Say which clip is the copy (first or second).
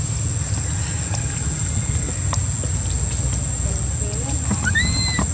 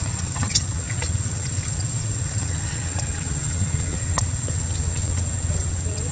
second